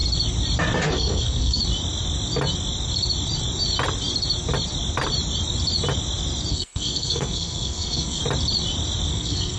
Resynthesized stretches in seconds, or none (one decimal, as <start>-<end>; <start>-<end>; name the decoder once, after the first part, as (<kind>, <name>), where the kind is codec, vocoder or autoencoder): 0.9-1.6 (codec, SNAC); 6.5-8.2; 9.1-9.6